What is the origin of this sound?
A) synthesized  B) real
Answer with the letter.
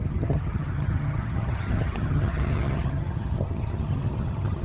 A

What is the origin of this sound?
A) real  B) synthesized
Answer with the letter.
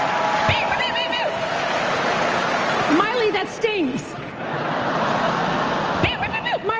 A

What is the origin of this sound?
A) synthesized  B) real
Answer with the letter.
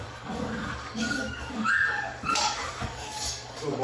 A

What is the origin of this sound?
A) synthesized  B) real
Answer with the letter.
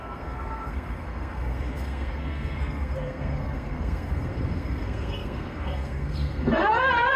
A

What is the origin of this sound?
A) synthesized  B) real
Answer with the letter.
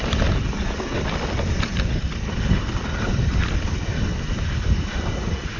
B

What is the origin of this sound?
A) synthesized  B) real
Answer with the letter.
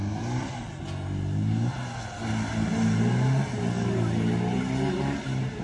B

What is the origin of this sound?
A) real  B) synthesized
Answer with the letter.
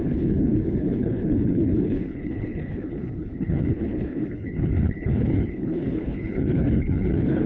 B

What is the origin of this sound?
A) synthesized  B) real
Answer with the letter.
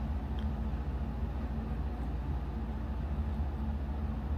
B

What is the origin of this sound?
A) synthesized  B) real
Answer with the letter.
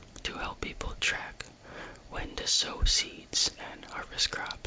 A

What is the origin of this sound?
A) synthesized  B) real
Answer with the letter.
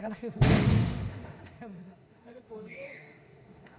A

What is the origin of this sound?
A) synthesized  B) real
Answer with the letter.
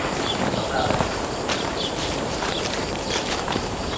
A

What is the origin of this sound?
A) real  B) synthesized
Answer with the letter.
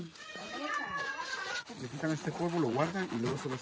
B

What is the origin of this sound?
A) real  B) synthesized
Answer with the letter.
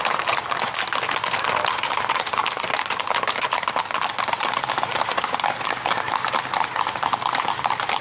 A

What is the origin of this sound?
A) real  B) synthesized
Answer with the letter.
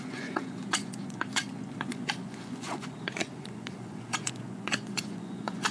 B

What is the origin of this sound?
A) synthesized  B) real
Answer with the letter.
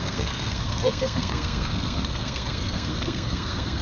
A